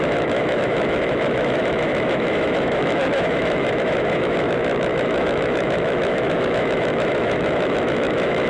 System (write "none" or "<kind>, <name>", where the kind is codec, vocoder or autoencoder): autoencoder, DAC-VAE